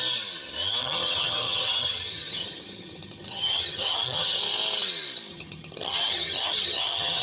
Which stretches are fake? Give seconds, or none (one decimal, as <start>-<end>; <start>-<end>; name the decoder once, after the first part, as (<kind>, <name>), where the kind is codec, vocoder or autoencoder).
0.8-4.4 (vocoder, HiFi-GAN); 5.3-7.2